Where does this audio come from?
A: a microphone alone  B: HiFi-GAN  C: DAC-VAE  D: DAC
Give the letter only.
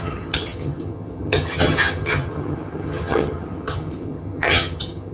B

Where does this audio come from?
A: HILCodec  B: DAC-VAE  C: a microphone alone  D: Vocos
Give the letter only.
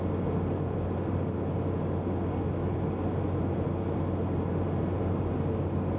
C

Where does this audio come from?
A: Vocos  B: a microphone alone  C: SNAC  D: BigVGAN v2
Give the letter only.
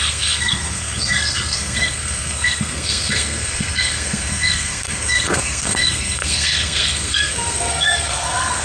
C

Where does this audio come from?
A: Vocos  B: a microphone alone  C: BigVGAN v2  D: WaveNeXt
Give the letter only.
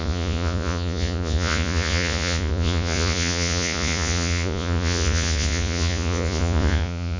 A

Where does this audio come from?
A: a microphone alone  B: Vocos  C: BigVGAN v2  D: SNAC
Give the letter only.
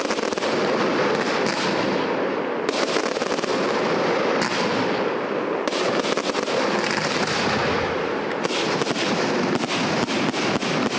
A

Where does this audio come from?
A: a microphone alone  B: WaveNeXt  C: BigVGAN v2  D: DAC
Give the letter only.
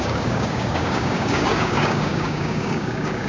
D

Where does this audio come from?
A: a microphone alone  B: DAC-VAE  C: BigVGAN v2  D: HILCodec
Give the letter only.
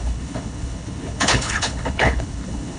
D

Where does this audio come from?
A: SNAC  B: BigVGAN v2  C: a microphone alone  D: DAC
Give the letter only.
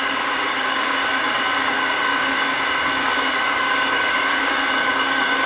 D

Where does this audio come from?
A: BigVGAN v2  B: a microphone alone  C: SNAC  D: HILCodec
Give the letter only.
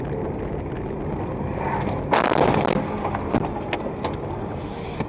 B